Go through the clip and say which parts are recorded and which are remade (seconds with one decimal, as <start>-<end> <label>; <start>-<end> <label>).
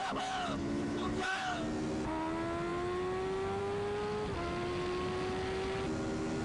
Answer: 0.0-1.6 remade; 1.6-6.4 recorded